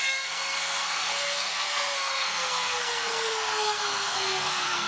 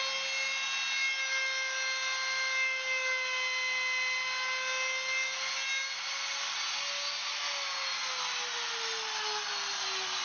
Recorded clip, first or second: second